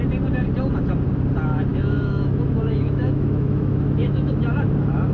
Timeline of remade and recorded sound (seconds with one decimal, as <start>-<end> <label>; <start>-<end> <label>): 0.0-1.7 recorded; 1.7-4.3 remade; 4.3-5.1 recorded